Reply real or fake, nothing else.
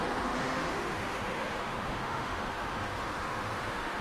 fake